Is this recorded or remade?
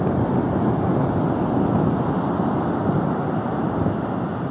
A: recorded